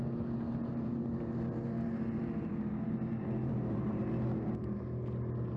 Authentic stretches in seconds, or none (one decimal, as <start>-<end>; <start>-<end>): 0.0-0.7; 4.0-5.6